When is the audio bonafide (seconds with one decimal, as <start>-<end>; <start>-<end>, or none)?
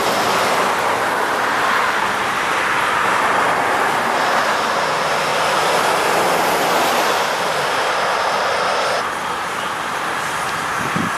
0.0-11.2